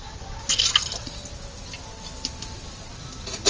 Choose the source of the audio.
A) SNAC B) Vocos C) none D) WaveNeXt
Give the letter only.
C